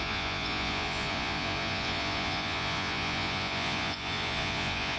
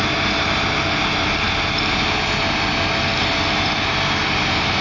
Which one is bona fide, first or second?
second